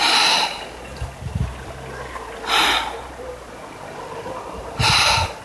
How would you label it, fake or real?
real